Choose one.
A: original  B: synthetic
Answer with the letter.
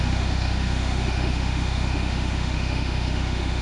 B